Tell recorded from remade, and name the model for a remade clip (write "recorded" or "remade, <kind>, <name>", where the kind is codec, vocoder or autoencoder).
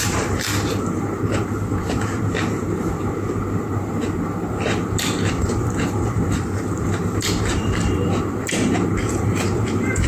remade, vocoder, BigVGAN v2